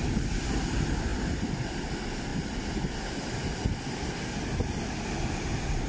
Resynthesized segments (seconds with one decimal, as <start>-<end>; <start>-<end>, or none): none